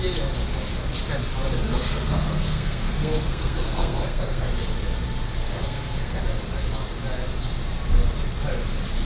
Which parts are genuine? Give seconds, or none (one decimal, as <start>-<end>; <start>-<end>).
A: 0.0-1.7; 4.5-5.4; 6.2-9.0

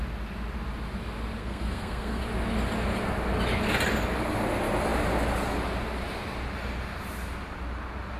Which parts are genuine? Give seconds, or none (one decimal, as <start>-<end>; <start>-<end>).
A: 0.0-1.4; 2.2-8.2

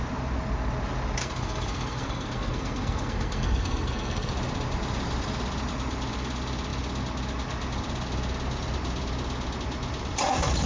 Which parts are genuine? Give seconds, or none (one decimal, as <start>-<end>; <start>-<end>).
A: 0.0-1.2; 4.3-10.7

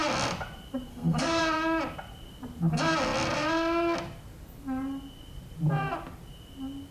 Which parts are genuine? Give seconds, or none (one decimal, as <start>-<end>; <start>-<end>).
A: 0.0-0.9; 1.4-6.9

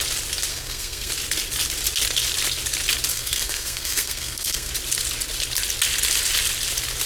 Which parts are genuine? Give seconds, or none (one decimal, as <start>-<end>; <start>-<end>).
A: 0.0-0.5; 1.1-3.1; 4.7-7.1

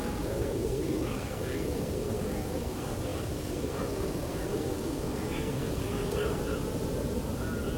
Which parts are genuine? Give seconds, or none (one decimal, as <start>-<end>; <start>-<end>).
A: 6.4-7.8

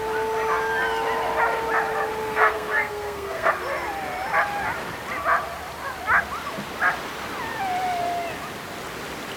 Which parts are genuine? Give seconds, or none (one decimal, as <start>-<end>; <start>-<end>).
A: 0.0-2.2; 3.5-9.4